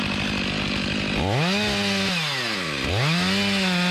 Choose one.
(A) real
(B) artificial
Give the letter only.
A